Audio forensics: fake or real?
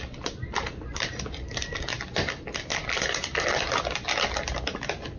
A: real